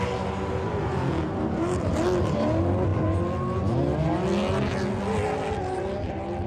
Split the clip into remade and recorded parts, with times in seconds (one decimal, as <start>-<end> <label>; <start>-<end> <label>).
0.0-6.5 recorded